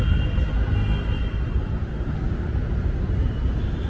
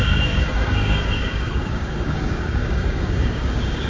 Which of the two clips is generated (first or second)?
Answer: second